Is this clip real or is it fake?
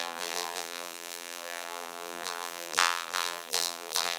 fake